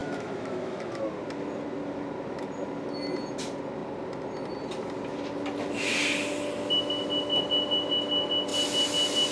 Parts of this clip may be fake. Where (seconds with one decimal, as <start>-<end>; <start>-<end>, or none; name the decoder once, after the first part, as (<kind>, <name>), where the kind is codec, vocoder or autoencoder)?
0.0-1.0 (autoencoder, DAC-VAE)